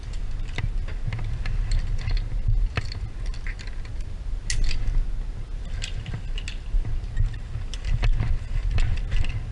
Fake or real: real